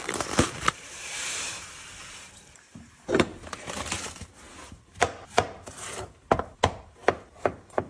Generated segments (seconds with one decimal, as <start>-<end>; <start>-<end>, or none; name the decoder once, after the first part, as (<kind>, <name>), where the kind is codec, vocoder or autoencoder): 0.0-7.0 (vocoder, BigVGAN v2)